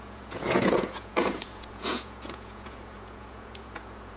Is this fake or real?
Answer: fake